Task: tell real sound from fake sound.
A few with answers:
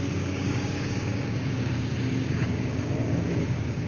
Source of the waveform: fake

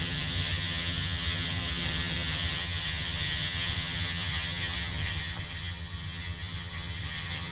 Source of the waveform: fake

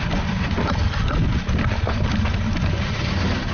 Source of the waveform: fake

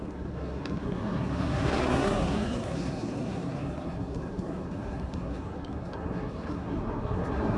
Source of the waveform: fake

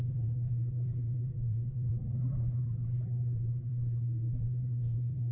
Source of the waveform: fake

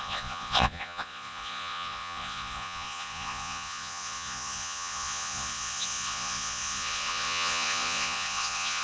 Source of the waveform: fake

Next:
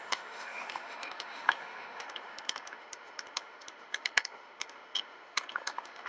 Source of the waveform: fake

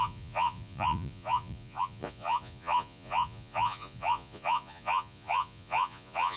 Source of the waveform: fake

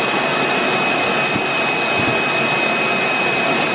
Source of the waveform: real